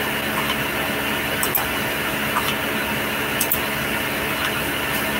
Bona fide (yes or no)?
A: yes